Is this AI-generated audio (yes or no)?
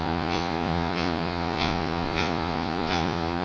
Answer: yes